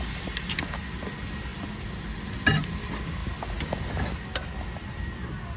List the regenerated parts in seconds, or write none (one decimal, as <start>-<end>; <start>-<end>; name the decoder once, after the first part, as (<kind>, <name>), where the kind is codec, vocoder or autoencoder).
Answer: none